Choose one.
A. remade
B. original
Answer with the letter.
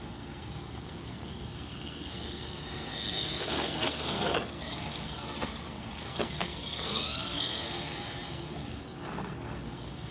A